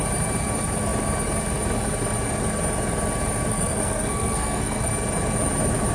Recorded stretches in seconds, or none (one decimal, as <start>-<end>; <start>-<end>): 0.0-3.5; 4.8-5.9